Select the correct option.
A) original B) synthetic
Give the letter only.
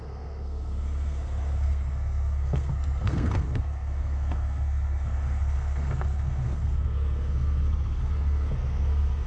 B